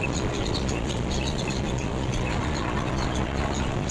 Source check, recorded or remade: remade